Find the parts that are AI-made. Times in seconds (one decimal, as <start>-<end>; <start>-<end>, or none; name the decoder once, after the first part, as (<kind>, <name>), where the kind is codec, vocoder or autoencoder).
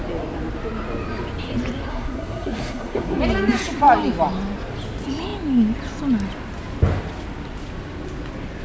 1.9-3.2 (codec, SNAC)